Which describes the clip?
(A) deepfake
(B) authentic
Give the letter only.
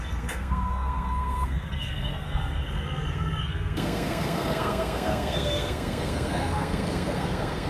A